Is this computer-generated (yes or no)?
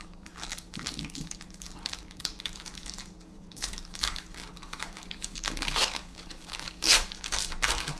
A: yes